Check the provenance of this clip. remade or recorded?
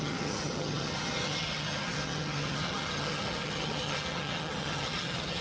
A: remade